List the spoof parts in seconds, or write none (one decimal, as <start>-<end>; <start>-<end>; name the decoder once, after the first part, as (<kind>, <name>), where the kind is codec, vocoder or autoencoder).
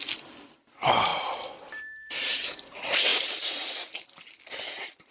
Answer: none